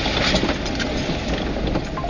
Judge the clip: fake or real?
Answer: real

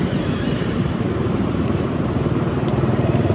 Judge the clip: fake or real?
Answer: fake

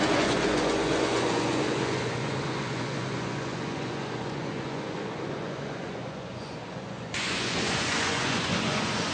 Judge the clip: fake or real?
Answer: fake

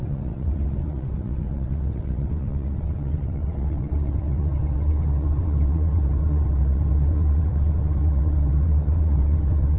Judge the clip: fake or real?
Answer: fake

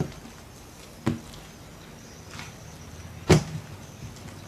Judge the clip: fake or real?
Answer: real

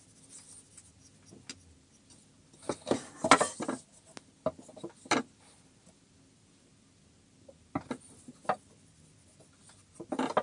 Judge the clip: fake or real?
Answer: real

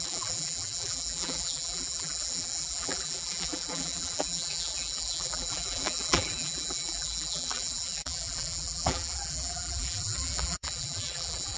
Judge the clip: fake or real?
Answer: fake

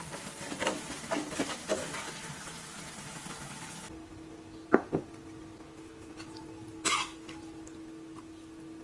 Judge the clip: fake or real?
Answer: real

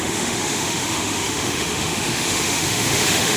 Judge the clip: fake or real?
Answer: fake